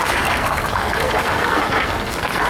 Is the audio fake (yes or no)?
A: yes